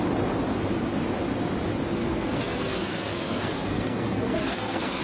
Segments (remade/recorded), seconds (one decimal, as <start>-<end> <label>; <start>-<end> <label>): 0.0-2.0 recorded; 2.0-5.0 remade